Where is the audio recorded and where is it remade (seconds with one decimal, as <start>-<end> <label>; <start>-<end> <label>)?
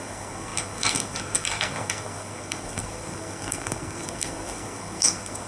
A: 0.0-5.5 remade